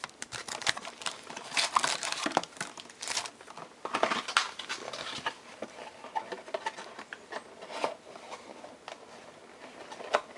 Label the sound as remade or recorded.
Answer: recorded